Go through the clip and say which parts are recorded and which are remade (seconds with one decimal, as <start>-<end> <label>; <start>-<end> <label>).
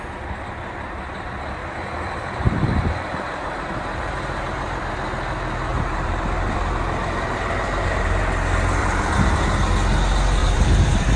0.0-1.6 recorded; 1.6-4.8 remade; 4.8-5.7 recorded; 5.7-8.2 remade; 8.2-8.8 recorded; 8.8-9.3 remade; 9.3-10.4 recorded; 10.4-11.2 remade